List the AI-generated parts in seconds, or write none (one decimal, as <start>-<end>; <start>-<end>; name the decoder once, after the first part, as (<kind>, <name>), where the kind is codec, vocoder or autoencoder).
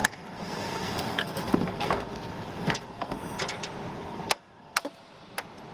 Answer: 0.0-3.4 (codec, SNAC); 3.9-4.8